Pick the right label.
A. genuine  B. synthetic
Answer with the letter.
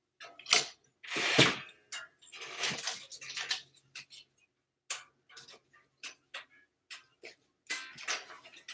A